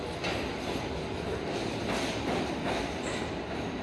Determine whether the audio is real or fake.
real